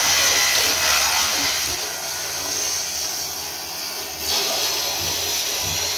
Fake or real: real